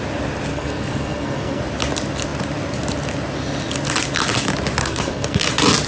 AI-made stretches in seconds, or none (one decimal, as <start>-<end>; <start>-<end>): 0.5-1.6; 4.8-5.5

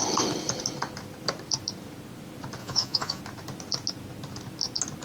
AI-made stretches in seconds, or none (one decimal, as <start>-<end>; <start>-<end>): 2.6-3.2

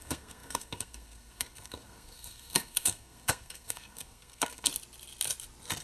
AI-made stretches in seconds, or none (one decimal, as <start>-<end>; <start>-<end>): 0.0-4.7